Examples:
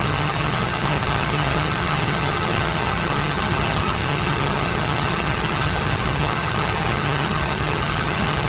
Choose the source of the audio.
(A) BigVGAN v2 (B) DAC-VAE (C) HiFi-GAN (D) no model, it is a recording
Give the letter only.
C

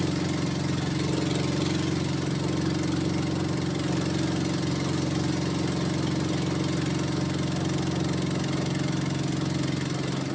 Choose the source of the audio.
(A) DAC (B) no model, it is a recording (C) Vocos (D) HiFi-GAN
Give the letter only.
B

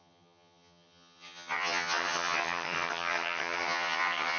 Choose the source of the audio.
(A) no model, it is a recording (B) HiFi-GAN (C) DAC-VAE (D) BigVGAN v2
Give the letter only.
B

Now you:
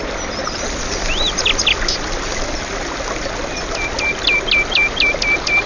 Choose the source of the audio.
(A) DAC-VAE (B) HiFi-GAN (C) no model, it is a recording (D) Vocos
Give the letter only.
C